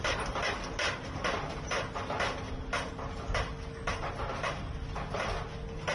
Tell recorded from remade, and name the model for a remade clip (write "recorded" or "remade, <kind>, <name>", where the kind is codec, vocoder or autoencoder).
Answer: recorded